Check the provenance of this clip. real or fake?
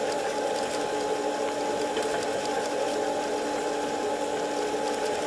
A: real